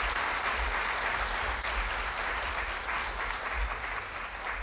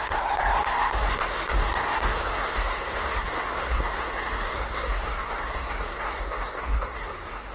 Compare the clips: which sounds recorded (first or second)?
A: first